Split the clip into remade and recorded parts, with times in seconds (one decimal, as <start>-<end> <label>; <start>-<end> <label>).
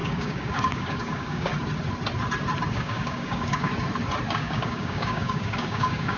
0.0-1.5 remade; 1.5-2.7 recorded; 2.7-3.7 remade; 3.7-4.3 recorded; 4.3-6.2 remade